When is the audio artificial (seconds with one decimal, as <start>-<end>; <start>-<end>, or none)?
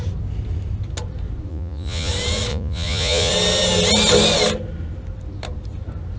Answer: 1.5-2.1; 2.5-3.3